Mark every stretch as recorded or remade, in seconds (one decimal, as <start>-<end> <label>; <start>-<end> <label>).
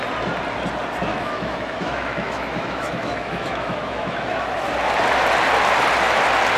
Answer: 0.0-1.1 recorded; 1.1-4.7 remade; 4.7-6.6 recorded